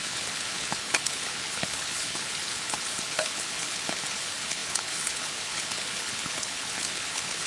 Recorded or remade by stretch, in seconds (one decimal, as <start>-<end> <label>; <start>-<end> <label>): 0.0-7.5 remade